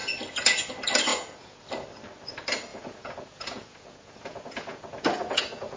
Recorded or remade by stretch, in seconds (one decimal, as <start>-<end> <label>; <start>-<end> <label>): 0.0-1.1 recorded; 1.1-1.6 remade; 1.6-2.7 recorded; 2.7-5.8 remade